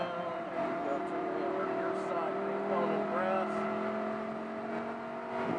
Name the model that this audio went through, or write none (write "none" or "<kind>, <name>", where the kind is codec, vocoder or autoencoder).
none